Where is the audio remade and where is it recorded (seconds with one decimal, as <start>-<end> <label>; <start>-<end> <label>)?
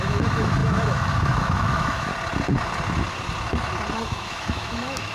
0.0-2.1 remade; 2.1-4.0 recorded; 4.0-5.1 remade